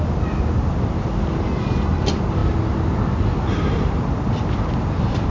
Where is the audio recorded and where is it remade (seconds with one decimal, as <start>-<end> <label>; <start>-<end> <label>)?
0.0-5.3 recorded